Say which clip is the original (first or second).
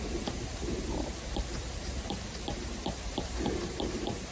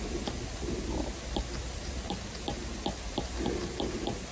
second